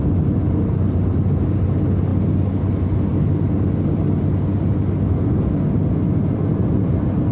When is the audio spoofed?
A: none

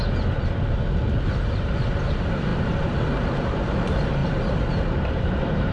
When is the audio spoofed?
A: 1.3-5.7 (vocoder, BigVGAN v2)

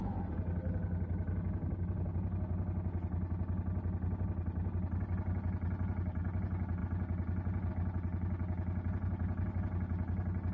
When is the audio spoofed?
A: none